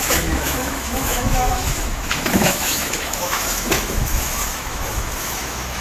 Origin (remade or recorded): remade